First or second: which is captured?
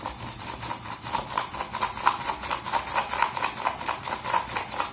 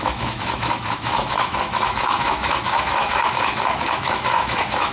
first